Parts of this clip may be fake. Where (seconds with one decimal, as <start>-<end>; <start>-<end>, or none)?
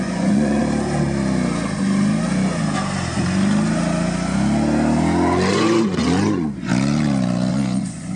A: 0.0-0.6; 5.5-6.7; 7.5-8.2